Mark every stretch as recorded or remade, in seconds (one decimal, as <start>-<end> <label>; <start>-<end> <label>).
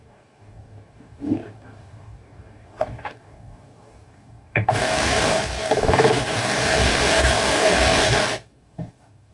0.0-9.3 remade